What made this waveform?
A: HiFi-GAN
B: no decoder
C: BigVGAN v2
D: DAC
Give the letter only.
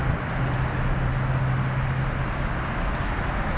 B